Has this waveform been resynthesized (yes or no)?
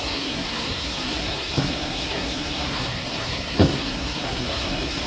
yes